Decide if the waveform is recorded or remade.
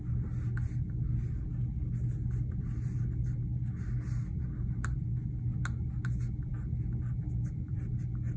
recorded